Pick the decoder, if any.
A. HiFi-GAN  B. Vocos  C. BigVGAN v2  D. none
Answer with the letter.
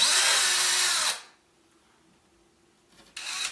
D